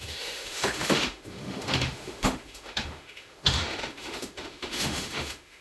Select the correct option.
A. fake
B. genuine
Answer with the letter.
A